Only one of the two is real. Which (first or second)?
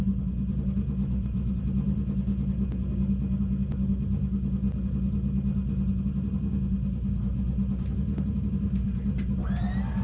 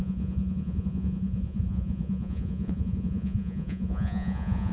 first